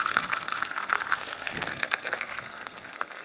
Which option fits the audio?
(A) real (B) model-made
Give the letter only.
B